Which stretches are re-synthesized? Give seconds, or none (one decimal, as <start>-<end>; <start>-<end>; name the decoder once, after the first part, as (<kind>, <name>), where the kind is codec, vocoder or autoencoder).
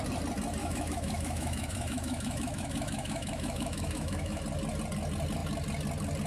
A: 0.6-4.4 (autoencoder, DAC-VAE)